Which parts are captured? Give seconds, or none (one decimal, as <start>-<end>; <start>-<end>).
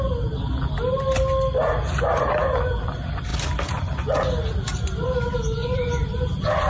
0.0-5.6; 6.1-6.7